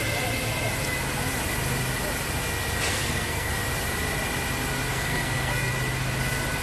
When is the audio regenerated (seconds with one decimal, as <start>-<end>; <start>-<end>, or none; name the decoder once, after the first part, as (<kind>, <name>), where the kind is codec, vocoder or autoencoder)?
2.9-3.5 (codec, SNAC); 4.9-5.7